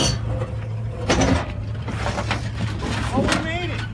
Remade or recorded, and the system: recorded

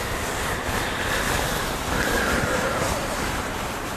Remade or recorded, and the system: recorded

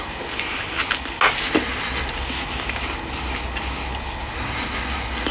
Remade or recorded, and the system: recorded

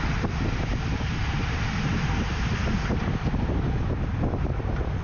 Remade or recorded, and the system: recorded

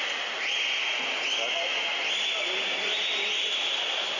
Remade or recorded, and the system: recorded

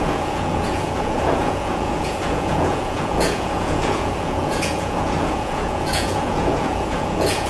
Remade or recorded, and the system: remade, vocoder, Vocos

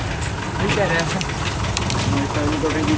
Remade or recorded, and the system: recorded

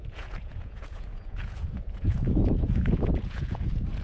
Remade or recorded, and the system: remade, vocoder, Vocos